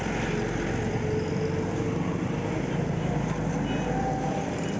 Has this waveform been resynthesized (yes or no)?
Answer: no